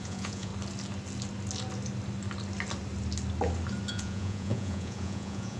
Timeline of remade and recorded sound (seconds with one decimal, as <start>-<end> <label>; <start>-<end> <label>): 0.0-0.5 remade; 0.5-3.9 recorded; 3.9-5.6 remade